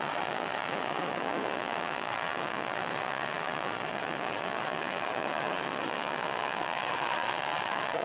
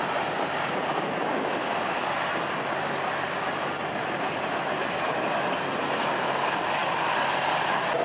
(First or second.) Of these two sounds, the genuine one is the second